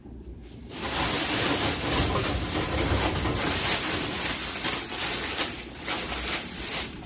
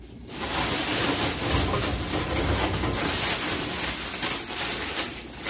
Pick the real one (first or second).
second